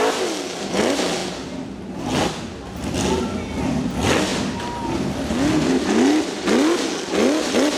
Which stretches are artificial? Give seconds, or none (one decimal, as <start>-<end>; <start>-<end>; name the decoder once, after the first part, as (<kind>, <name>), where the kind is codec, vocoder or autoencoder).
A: none

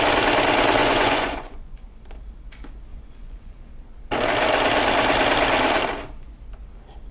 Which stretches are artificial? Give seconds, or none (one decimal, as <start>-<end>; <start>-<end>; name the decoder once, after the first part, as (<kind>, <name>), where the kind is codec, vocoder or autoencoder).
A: 0.8-2.0 (vocoder, Vocos); 2.9-3.7

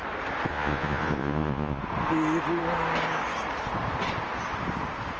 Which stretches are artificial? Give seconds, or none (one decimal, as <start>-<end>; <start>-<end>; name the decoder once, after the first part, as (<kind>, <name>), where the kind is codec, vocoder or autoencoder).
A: 0.5-1.8 (vocoder, Vocos)

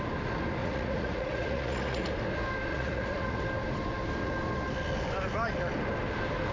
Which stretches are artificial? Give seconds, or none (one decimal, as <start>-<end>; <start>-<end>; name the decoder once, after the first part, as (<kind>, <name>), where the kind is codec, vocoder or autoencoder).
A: 0.6-2.1 (vocoder, Vocos); 2.7-3.4

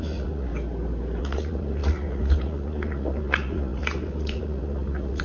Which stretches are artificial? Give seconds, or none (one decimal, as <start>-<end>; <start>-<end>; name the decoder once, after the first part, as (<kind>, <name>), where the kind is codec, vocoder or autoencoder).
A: 0.0-0.5 (vocoder, Vocos); 1.2-5.2

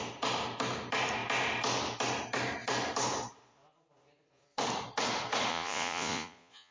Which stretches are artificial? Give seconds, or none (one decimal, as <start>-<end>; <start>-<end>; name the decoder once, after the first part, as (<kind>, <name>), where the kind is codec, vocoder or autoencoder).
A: 5.5-6.7 (vocoder, Vocos)